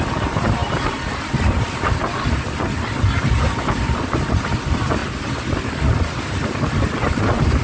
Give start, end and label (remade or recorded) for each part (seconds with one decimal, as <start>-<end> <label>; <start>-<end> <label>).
0.0-7.6 recorded